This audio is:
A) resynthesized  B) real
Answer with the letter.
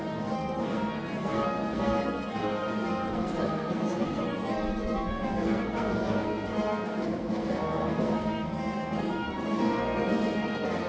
A